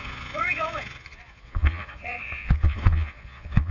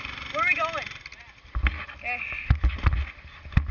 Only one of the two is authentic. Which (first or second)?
second